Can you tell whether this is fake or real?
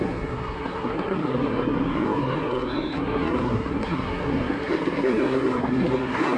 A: fake